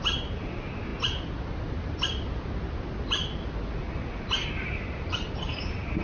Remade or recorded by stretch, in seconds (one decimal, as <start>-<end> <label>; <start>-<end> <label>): 0.0-6.0 recorded

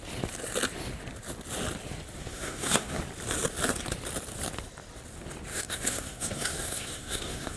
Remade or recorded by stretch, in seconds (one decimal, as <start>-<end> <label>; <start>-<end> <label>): 0.0-2.2 recorded; 2.2-3.0 remade; 3.0-5.5 recorded; 5.5-7.6 remade

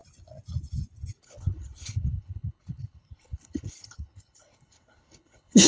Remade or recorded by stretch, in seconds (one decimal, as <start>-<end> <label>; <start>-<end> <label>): 0.0-1.2 recorded; 1.2-5.7 remade

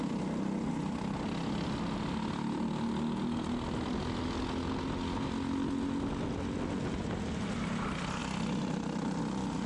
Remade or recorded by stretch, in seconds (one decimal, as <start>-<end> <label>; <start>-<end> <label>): 0.0-8.2 recorded; 8.2-9.2 remade; 9.2-9.7 recorded

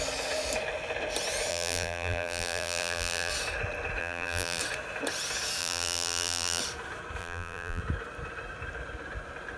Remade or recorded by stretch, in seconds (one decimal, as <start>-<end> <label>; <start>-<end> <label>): 0.0-1.5 recorded; 1.5-3.3 remade; 3.3-4.0 recorded; 4.0-4.6 remade; 4.6-5.6 recorded; 5.6-6.6 remade; 6.6-7.2 recorded; 7.2-7.8 remade; 7.8-9.6 recorded

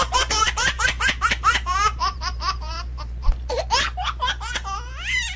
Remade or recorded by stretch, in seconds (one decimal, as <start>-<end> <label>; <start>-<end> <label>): 0.0-0.4 recorded; 0.4-3.3 remade; 3.3-5.4 recorded